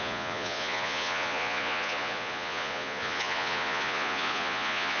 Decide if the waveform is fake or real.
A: fake